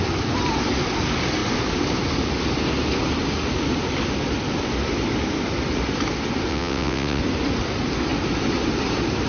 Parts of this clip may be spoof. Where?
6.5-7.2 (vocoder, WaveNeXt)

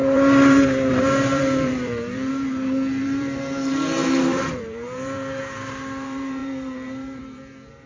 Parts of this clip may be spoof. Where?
0.0-7.9 (vocoder, BigVGAN v2)